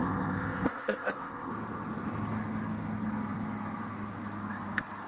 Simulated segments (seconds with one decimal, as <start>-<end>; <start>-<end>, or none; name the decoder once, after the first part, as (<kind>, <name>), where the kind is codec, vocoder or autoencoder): 0.0-1.5 (codec, ZipCodec)